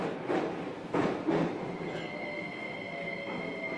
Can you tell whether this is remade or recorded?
recorded